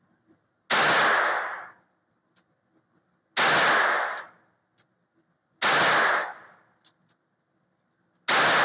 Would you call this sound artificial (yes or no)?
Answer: no